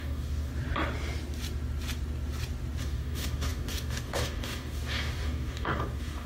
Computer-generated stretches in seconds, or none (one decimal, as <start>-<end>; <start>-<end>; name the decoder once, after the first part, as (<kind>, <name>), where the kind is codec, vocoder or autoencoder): 0.0-0.5 (codec, DAC); 2.8-6.3

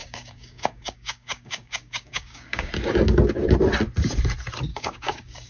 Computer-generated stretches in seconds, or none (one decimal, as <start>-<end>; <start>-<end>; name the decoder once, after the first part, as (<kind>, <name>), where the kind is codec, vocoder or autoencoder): 0.0-2.7 (codec, DAC); 4.7-5.5

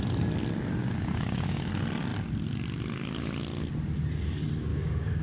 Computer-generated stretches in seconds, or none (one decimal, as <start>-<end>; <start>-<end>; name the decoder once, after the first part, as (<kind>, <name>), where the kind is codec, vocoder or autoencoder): 0.8-1.7 (codec, DAC); 4.7-5.2

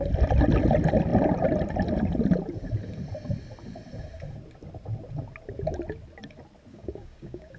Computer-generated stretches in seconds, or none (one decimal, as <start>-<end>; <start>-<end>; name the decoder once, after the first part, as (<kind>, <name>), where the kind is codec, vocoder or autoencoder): 6.7-7.6 (codec, DAC)